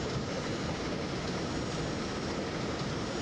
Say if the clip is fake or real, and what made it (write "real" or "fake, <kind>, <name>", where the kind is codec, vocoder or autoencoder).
real